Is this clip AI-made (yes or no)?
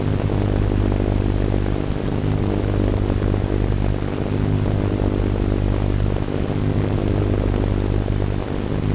no